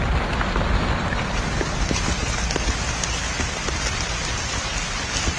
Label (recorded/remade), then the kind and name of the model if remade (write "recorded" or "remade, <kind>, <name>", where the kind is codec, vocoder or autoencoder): recorded